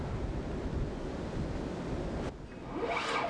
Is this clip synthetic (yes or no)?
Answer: no